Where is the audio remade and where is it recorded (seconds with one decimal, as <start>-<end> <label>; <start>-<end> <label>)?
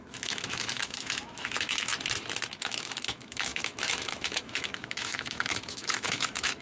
0.0-1.9 remade; 1.9-2.6 recorded; 2.6-6.6 remade